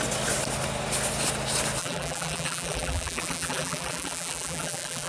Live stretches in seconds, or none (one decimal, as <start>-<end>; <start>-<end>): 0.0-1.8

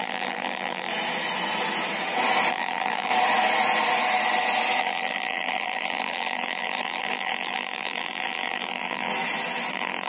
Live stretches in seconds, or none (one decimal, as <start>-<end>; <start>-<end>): 0.9-2.5; 3.1-4.8; 9.1-9.7

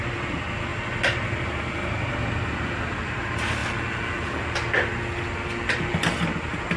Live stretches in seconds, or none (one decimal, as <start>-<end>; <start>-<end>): 0.0-0.7; 3.2-6.8

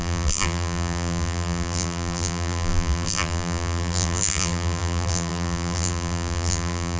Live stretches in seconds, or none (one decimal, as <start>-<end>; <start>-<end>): none

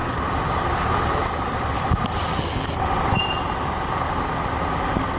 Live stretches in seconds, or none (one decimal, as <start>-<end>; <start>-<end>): 0.0-1.7; 2.2-4.5

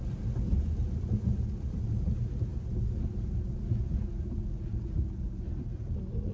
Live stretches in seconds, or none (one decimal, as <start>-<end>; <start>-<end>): 0.0-6.3